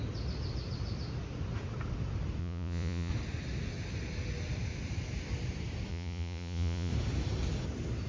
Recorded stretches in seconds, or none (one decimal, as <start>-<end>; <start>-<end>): 0.0-2.4; 3.1-5.9; 6.9-8.1